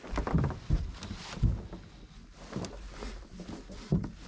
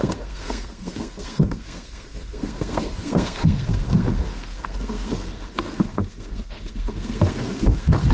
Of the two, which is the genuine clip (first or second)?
first